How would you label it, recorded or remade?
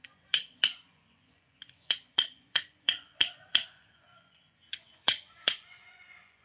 remade